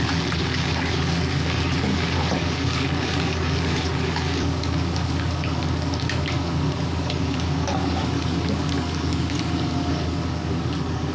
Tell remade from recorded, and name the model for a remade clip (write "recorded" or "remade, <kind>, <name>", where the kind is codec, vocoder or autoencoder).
remade, codec, DAC